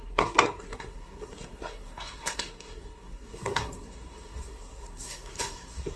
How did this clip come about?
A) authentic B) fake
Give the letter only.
B